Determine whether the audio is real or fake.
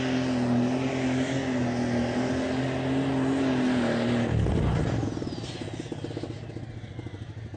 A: real